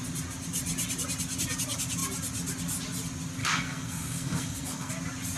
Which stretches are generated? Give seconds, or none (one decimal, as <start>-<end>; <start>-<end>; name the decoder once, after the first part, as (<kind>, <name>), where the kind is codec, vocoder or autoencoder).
3.4-4.9 (codec, SNAC)